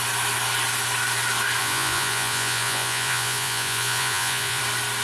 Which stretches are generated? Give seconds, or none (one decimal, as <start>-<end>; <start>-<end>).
1.6-4.6

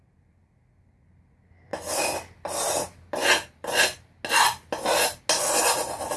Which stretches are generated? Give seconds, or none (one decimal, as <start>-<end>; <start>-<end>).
none